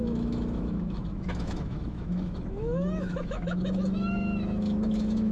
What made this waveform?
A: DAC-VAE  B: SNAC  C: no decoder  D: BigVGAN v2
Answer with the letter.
A